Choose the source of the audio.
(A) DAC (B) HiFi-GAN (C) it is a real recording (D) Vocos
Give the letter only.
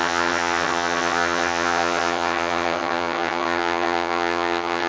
B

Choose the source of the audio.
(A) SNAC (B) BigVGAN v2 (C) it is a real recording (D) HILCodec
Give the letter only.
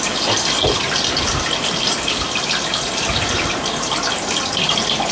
C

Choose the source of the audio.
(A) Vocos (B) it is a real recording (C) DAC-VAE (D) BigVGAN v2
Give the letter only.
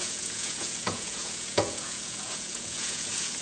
A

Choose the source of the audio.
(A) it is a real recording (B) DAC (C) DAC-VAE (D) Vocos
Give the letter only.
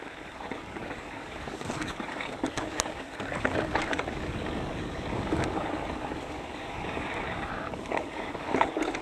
B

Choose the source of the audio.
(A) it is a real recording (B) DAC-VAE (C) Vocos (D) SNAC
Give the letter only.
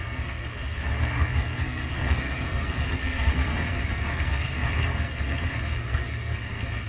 D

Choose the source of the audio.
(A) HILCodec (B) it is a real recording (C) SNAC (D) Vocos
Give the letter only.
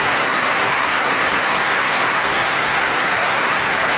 C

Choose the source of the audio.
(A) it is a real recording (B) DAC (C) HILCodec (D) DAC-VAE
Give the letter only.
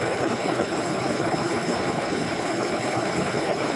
C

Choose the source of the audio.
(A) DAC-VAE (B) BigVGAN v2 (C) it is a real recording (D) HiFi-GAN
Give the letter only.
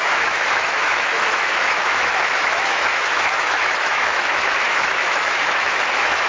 A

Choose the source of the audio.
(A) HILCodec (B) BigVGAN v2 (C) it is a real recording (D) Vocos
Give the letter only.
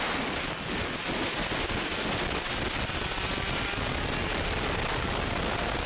C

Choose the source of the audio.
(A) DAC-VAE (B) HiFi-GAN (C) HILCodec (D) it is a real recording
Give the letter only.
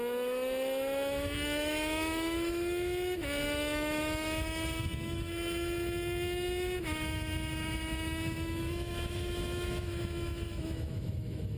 A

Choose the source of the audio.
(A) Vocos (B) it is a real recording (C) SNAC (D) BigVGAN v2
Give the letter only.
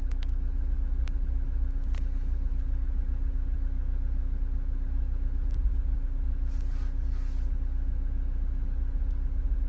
B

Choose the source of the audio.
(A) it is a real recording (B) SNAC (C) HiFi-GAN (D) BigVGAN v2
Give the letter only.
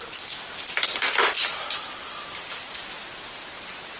A